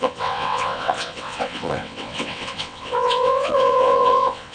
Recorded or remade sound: remade